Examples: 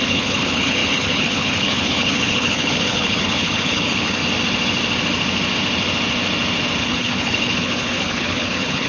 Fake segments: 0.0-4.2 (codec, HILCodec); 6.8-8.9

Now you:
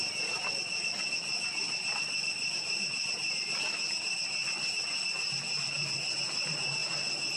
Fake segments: none

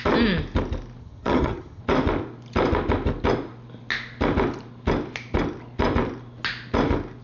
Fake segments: 1.0-1.8 (vocoder, HiFi-GAN)

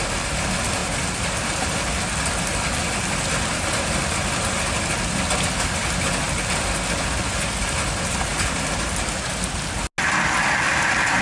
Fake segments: none

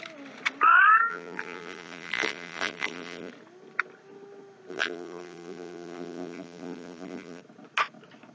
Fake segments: 1.1-3.3 (vocoder, BigVGAN v2); 4.7-7.4

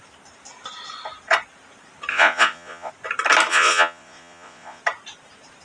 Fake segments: 2.1-2.9 (vocoder, Vocos); 3.5-4.8